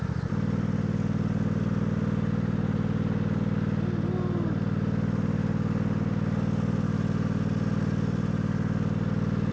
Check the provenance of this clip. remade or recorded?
recorded